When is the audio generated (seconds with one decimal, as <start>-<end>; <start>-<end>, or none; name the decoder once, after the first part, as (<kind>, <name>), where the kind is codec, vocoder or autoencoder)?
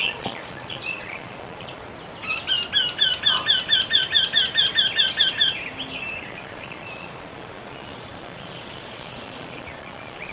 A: 0.0-1.9 (vocoder, Vocos); 6.2-10.3